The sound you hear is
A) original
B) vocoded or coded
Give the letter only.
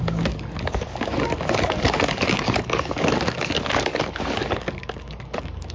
B